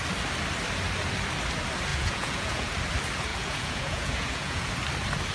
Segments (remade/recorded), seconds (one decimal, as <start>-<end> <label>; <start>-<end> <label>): 0.0-1.9 recorded; 1.9-2.7 remade; 2.7-3.3 recorded; 3.3-4.7 remade; 4.7-5.3 recorded